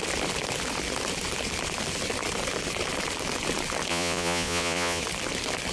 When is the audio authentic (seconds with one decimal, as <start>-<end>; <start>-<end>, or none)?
0.0-3.9; 5.0-5.7